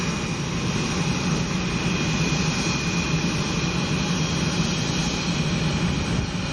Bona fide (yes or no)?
yes